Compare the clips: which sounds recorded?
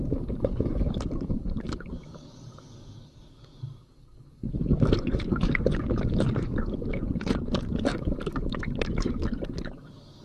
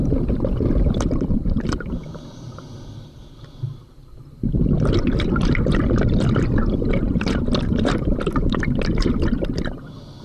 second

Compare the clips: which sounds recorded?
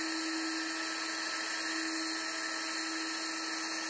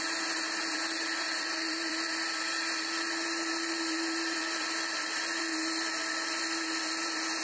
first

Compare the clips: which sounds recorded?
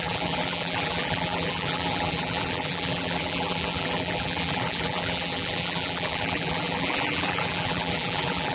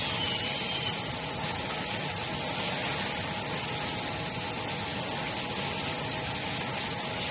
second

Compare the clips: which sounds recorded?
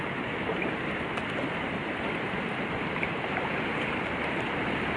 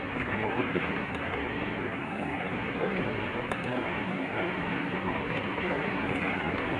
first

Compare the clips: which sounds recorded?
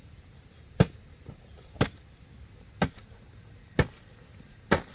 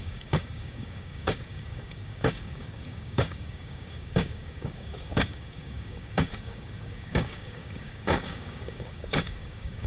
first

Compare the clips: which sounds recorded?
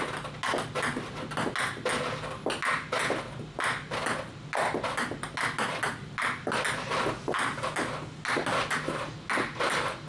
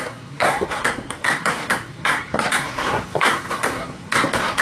first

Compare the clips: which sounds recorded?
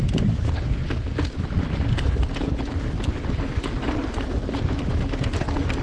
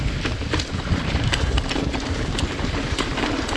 first